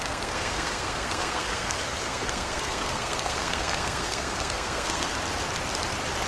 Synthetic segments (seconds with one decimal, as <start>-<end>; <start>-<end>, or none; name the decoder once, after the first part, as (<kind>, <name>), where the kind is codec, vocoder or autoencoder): 0.0-5.1 (codec, SNAC)